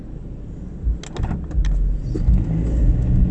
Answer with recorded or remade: recorded